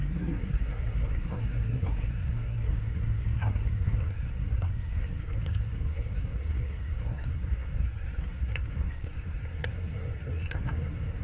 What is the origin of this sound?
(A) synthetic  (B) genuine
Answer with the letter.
A